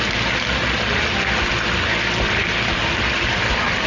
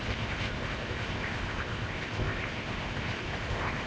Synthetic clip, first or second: second